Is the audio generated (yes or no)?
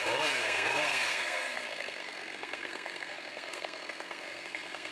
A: yes